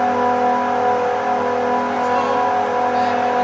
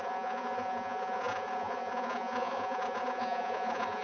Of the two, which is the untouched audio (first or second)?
first